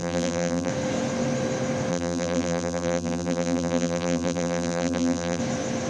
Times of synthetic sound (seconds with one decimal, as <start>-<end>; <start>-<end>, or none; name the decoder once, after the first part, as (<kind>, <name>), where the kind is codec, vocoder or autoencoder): 0.0-0.7 (vocoder, BigVGAN v2); 1.9-5.4